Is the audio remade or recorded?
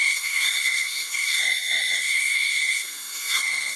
remade